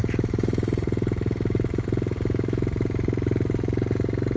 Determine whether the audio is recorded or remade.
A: recorded